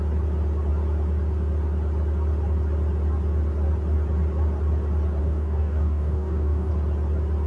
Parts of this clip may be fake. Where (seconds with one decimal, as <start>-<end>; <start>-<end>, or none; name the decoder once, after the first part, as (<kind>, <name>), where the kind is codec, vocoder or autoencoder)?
5.2-6.7 (codec, DAC)